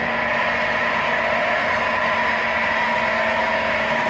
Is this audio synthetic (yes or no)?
no